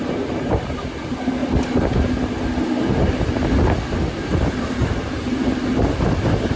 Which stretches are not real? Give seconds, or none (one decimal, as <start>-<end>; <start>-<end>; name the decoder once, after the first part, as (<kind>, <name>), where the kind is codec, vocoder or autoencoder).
none